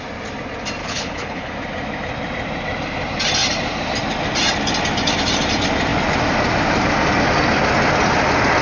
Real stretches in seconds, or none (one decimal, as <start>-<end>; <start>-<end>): 0.0-0.8; 1.5-8.6